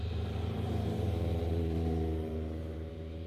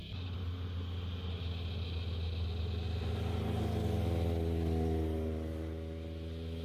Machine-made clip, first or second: first